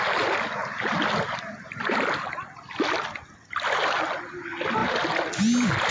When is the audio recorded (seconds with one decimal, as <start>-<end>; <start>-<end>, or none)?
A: 0.0-5.9